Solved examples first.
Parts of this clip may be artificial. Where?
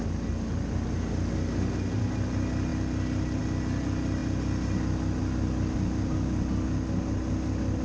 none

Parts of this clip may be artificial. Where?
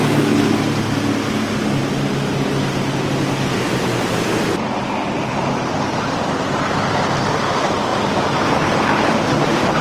none